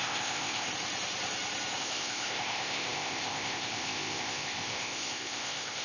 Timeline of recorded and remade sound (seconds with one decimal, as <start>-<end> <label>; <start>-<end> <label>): 0.0-0.7 remade; 0.7-1.8 recorded; 1.8-5.8 remade